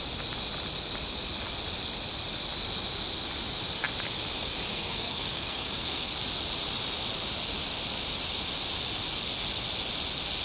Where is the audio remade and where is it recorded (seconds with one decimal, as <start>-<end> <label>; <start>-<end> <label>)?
0.0-4.7 recorded; 4.7-6.1 remade; 6.1-10.4 recorded